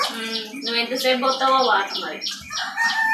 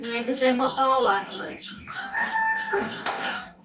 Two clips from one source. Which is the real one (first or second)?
first